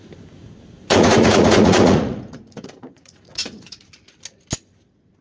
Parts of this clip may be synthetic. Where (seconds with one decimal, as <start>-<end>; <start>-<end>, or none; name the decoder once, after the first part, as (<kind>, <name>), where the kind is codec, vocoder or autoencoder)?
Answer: 0.8-3.9 (vocoder, Vocos)